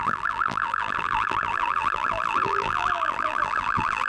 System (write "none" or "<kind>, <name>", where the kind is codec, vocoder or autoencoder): vocoder, BigVGAN v2